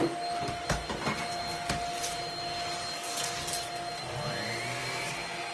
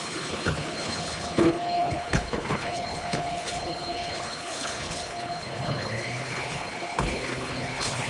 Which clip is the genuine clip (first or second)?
first